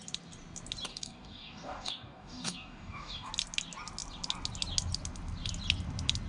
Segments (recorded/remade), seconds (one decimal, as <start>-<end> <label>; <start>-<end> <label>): 0.0-0.9 recorded; 0.9-3.3 remade; 3.3-6.3 recorded